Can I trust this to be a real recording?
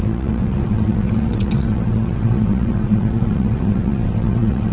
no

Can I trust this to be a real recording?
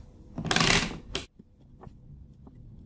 yes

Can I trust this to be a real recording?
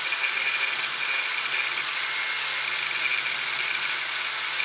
yes